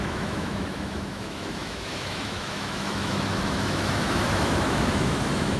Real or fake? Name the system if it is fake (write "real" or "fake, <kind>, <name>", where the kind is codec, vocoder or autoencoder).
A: fake, autoencoder, DAC-VAE